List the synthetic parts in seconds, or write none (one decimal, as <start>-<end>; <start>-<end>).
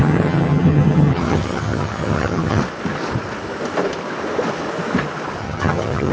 0.0-2.6; 5.4-6.1